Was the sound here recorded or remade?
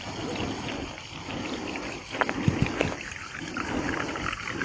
recorded